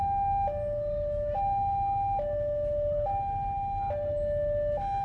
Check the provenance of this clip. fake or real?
real